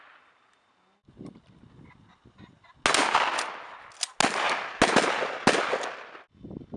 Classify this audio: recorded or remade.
recorded